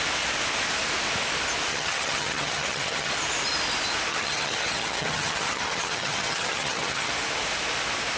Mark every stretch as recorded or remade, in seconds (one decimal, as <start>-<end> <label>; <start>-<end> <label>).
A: 0.0-1.7 recorded; 1.7-3.1 remade; 3.1-4.1 recorded; 4.1-7.1 remade; 7.1-8.2 recorded